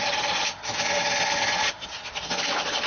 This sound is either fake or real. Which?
real